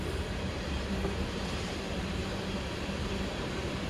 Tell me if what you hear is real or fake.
fake